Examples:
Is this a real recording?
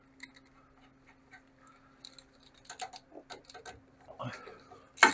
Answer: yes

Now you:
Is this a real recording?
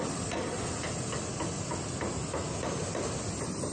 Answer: yes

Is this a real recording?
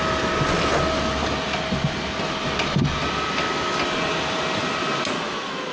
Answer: yes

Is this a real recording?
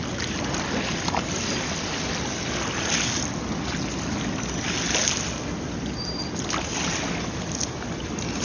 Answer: yes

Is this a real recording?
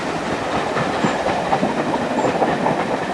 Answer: yes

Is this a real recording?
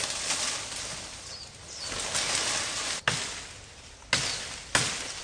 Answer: yes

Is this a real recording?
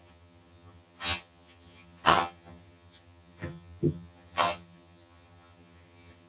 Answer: no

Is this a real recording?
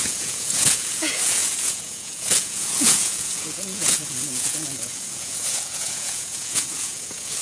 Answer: no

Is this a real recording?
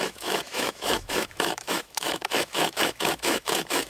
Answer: no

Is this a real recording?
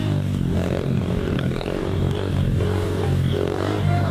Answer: no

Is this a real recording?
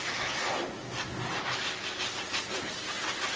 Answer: yes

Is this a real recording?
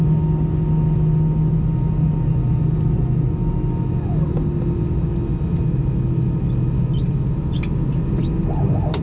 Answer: yes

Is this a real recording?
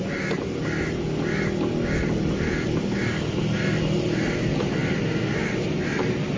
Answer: yes